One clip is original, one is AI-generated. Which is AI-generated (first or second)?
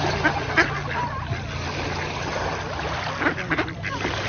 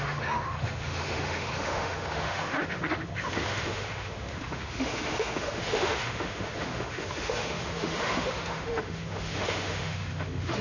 second